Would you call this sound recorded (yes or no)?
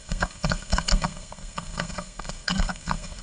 no